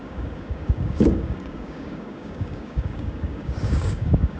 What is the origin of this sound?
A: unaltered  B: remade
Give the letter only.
B